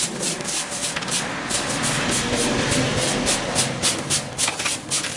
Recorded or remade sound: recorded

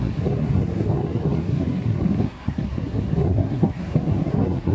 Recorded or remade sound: remade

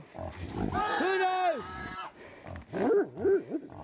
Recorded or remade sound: recorded